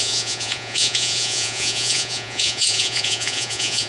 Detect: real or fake fake